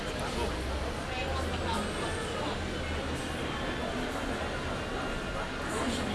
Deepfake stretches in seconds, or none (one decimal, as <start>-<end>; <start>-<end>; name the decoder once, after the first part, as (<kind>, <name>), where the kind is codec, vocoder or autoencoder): none